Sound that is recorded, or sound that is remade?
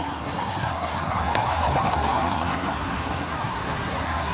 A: remade